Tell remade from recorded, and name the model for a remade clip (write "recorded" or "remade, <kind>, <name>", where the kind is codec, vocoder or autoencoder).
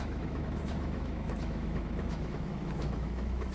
remade, autoencoder, DAC-VAE